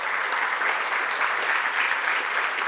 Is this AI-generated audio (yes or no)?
no